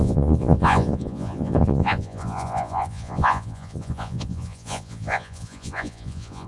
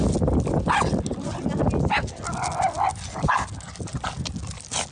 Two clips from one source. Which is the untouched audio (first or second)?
second